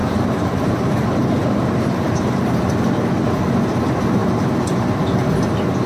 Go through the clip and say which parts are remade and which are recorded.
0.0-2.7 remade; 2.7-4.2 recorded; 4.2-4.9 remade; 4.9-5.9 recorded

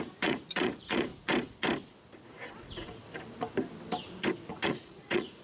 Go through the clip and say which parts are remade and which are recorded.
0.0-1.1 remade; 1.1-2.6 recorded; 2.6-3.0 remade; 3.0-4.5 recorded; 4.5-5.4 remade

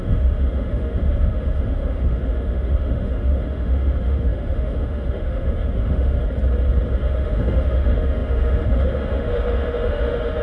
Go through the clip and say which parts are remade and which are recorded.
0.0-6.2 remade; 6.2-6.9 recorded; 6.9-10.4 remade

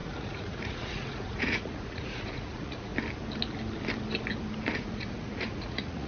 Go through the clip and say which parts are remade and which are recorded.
0.0-2.9 remade; 2.9-4.7 recorded; 4.7-6.1 remade